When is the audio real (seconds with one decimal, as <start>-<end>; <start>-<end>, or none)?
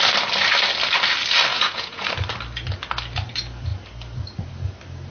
0.0-1.5; 2.1-5.1